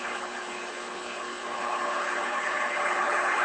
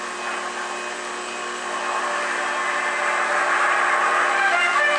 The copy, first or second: first